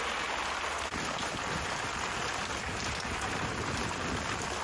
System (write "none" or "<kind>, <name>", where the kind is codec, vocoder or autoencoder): none